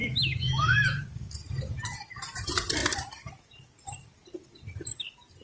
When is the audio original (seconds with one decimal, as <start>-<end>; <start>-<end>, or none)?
1.3-5.4